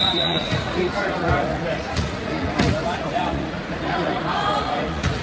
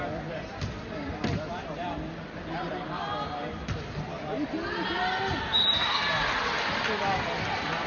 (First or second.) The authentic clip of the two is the second